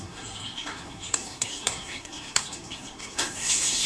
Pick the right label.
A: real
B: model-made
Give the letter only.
B